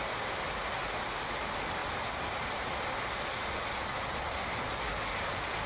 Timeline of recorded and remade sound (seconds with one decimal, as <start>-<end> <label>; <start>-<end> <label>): 0.0-5.7 recorded